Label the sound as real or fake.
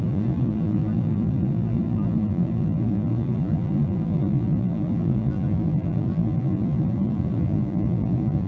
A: fake